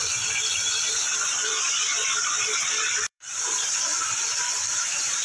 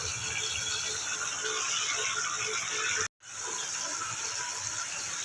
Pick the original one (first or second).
second